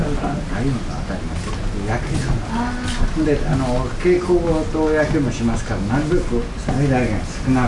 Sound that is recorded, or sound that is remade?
recorded